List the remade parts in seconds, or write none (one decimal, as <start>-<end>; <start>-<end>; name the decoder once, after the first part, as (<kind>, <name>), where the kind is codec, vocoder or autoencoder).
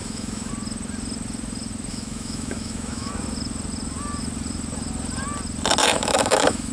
0.0-0.5 (autoencoder, DAC-VAE); 1.9-3.1; 5.8-6.7